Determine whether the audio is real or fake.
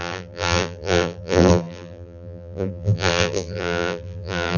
fake